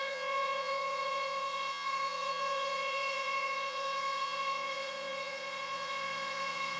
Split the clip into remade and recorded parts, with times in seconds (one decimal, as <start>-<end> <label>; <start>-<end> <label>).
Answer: 0.0-6.8 remade